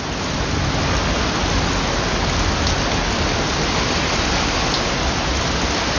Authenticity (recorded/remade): recorded